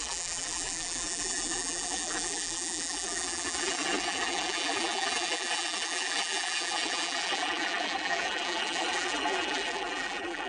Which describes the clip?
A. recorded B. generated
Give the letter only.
B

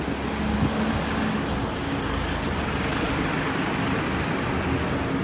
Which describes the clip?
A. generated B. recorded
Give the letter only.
B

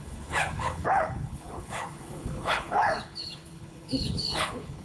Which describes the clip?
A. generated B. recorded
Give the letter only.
A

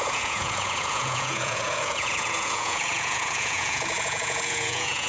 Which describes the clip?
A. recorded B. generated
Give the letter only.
B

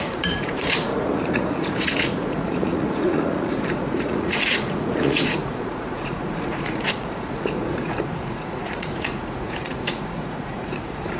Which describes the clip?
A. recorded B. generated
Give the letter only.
B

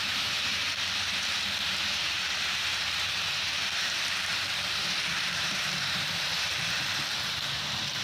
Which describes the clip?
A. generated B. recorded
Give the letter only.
A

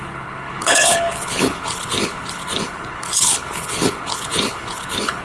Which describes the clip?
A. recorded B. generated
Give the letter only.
B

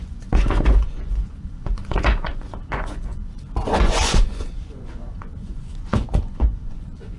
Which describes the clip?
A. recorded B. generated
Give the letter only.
B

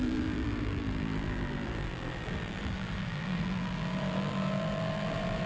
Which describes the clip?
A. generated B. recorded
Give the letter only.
A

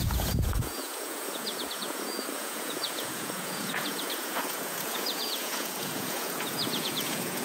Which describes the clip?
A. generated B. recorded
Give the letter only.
A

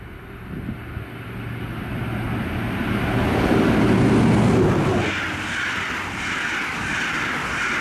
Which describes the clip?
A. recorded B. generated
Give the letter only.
A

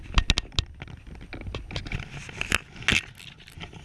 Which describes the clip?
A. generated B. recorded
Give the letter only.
B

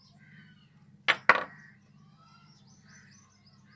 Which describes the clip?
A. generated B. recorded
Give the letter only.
B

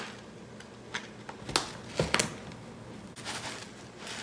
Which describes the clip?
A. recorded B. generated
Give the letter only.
A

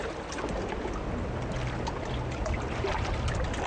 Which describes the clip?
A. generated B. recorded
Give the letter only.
B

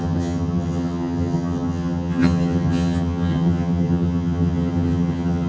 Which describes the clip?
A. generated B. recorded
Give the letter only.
A